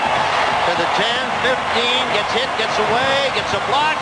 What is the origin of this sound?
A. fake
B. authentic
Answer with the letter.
B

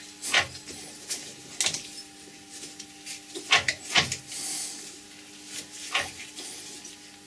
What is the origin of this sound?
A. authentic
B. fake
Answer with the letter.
A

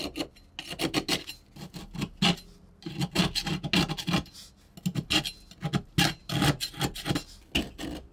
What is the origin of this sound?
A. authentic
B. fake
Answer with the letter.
A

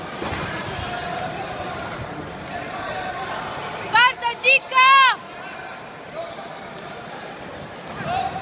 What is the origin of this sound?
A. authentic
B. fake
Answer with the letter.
A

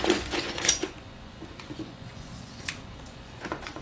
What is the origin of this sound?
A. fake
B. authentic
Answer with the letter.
A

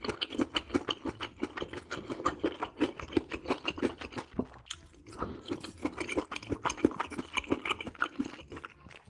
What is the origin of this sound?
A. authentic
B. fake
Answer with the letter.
A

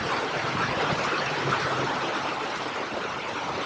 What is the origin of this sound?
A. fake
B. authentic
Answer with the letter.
B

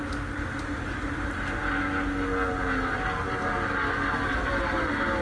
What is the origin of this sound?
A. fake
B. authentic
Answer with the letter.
B